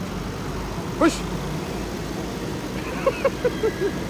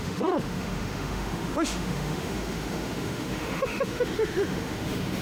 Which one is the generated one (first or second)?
second